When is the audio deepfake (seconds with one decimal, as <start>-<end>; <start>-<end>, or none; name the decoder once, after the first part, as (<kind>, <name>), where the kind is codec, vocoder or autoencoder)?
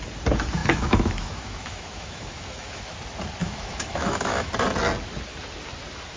0.6-2.8 (autoencoder, DAC-VAE); 3.4-4.5